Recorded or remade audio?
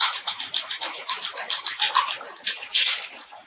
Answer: remade